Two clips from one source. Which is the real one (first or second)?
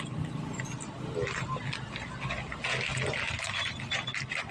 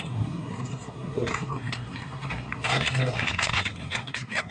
first